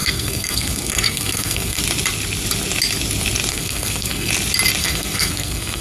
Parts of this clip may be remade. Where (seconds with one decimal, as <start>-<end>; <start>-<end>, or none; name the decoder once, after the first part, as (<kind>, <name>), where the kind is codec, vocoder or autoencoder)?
0.0-1.8 (codec, SNAC); 3.5-4.3; 4.8-5.8